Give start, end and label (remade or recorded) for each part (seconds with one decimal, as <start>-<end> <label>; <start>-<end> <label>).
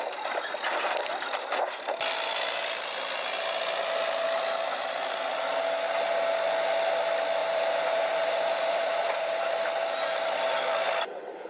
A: 0.0-7.4 recorded; 7.4-9.5 remade; 9.5-11.5 recorded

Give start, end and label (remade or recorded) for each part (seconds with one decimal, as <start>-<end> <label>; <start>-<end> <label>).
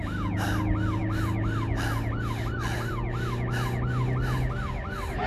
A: 0.0-5.3 recorded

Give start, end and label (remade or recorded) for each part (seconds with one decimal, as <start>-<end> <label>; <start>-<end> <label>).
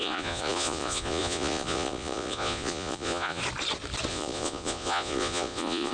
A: 0.0-3.4 remade; 3.4-4.1 recorded; 4.1-5.9 remade